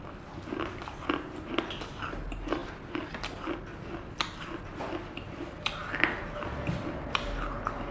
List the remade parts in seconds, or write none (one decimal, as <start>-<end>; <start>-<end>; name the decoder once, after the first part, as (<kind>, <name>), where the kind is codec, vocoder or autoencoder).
none